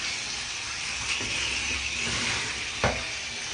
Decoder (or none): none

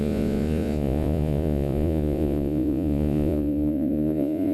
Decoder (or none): vocoder, Vocos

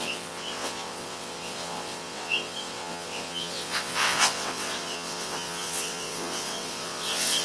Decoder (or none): vocoder, WaveNeXt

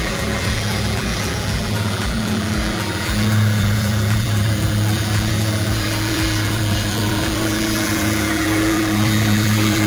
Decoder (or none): vocoder, BigVGAN v2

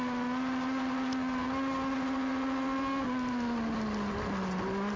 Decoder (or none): none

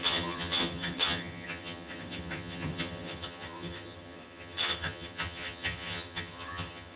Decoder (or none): vocoder, HiFi-GAN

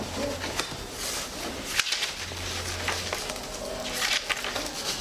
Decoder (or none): none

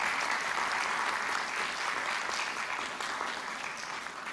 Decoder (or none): none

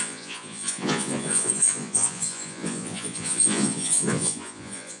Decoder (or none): vocoder, Vocos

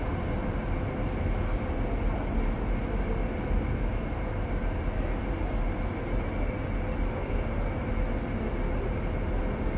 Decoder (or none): none